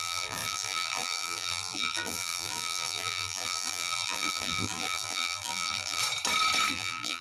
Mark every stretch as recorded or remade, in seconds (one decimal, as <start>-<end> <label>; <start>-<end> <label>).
0.0-6.0 remade; 6.0-6.7 recorded; 6.7-7.2 remade